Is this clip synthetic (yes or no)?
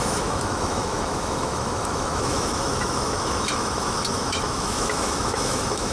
yes